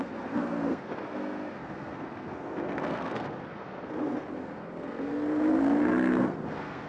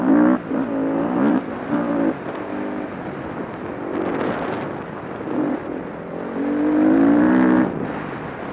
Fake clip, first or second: first